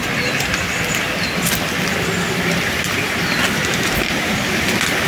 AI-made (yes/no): no